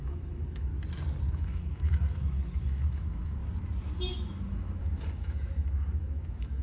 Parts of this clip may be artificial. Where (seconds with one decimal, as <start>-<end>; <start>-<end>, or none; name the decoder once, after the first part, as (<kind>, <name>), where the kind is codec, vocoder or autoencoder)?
0.0-0.7 (autoencoder, DAC-VAE); 1.3-3.4; 4.1-6.6